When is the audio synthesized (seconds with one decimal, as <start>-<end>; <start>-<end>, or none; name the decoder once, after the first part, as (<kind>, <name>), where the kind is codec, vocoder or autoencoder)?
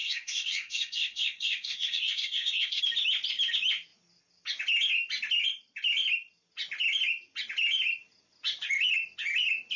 0.0-2.8 (codec, SNAC)